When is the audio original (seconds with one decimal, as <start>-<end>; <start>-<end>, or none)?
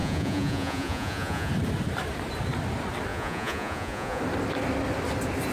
1.5-3.1; 4.2-5.5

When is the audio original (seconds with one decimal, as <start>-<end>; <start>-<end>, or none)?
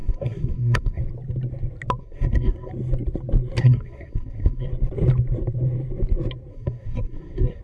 1.0-2.0; 2.7-3.6; 4.7-6.5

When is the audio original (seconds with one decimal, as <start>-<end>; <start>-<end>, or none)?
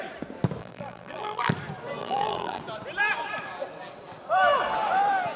0.0-0.6; 1.5-2.0; 2.6-5.4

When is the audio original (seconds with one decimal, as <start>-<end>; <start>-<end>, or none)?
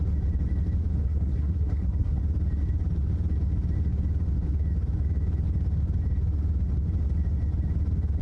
0.0-0.9; 2.2-8.2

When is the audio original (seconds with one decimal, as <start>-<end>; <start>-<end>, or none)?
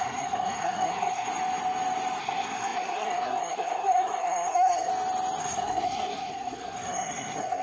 1.3-2.2; 4.9-5.4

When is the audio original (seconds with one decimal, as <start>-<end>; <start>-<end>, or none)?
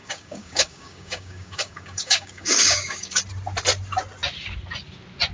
3.2-5.3